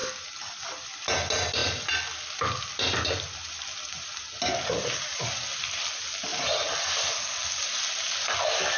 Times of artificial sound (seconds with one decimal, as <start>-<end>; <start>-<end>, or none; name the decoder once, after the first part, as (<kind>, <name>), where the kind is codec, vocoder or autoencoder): 0.0-0.6 (vocoder, BigVGAN v2); 1.6-4.2